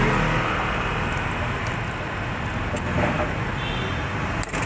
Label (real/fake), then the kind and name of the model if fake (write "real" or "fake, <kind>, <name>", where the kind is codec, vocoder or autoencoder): real